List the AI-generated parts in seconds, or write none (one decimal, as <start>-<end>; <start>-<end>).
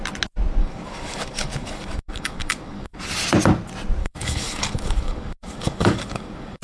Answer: 0.6-3.0; 4.0-6.6